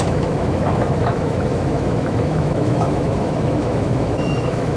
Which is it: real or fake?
fake